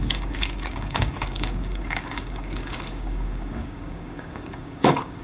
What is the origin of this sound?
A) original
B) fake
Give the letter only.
B